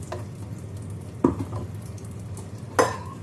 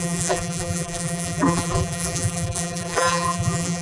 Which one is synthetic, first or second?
second